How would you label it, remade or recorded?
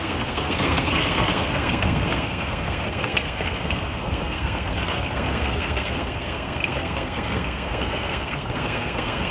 remade